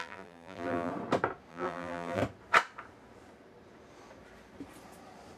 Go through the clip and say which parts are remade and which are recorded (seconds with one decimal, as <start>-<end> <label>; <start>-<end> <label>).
0.0-0.9 remade; 0.9-1.5 recorded; 1.5-2.2 remade; 2.2-5.4 recorded